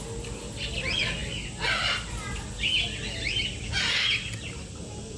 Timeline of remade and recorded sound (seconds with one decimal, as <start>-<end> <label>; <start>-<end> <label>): 0.0-5.2 recorded